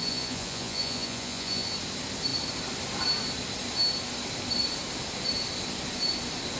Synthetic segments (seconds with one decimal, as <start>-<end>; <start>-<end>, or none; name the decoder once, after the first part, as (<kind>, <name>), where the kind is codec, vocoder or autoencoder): 0.0-1.7 (vocoder, Vocos)